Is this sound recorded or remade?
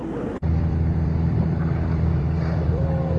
remade